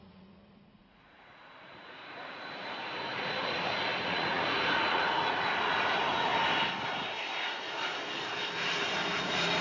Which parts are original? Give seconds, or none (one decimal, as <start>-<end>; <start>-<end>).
6.3-6.9; 7.9-9.2